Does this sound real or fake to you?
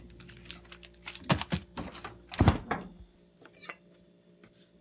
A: real